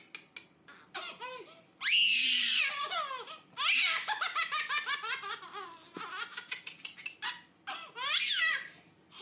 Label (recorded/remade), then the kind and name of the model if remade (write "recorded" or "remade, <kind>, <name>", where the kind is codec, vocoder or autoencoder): recorded